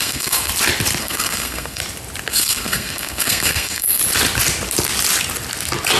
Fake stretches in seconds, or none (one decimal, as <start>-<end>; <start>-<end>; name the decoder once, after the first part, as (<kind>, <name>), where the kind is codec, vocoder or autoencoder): 0.0-0.5 (codec, SNAC); 1.0-1.8; 2.3-4.0